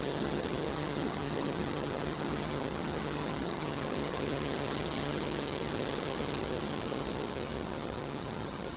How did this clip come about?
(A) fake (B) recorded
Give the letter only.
A